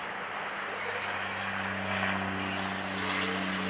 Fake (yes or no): no